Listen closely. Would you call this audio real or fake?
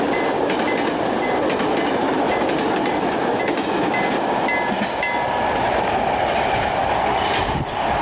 real